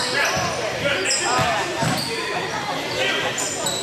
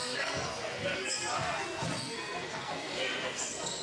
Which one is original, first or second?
first